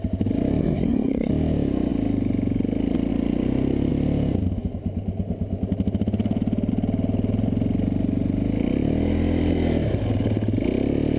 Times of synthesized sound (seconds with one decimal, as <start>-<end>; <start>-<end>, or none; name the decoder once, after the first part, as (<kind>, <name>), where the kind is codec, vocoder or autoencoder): 0.6-1.3 (codec, SNAC)